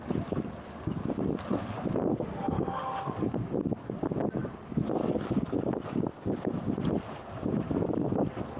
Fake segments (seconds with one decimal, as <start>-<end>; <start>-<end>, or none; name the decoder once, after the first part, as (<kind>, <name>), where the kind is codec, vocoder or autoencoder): 2.1-3.2 (autoencoder, DAC-VAE)